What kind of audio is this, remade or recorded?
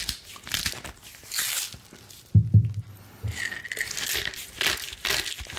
recorded